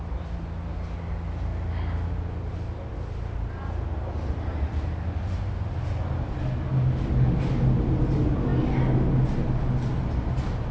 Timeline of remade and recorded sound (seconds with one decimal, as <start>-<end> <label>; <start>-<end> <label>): 0.0-10.7 recorded